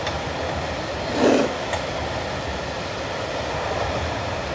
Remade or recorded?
recorded